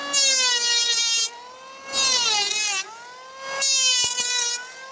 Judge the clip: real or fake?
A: real